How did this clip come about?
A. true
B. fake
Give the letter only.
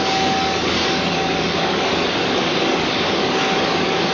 B